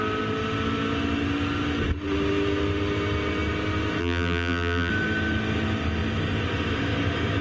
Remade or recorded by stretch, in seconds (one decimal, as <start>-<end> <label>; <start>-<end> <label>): 0.0-4.0 recorded; 4.0-4.9 remade; 4.9-7.4 recorded